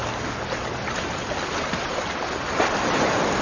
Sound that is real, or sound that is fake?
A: real